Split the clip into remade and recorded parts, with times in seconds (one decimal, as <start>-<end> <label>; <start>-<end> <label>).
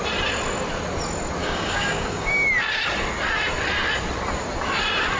0.0-1.4 recorded; 1.4-2.5 remade; 2.5-5.2 recorded